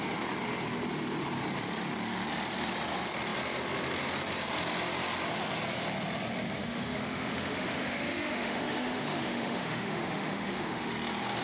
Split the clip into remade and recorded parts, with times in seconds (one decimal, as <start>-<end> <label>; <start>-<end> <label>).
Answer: 0.0-6.6 recorded; 6.6-10.9 remade; 10.9-11.4 recorded